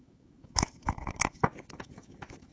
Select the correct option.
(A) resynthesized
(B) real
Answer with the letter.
A